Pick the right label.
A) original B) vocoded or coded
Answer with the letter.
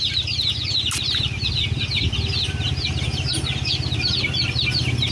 A